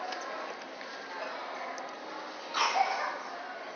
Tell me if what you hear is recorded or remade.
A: recorded